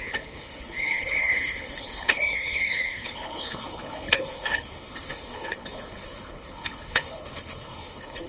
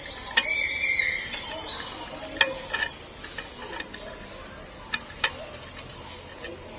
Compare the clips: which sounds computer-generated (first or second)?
first